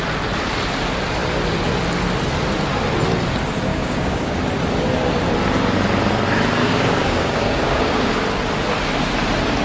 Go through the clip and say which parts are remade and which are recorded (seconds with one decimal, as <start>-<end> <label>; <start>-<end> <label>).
0.0-3.7 recorded; 3.7-4.4 remade; 4.4-6.6 recorded; 6.6-8.2 remade; 8.2-9.6 recorded